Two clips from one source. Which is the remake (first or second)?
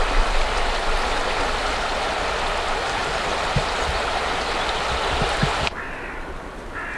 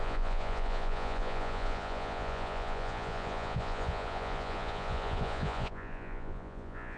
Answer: second